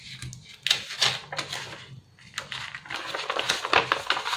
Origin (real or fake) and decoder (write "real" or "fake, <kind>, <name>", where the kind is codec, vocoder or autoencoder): real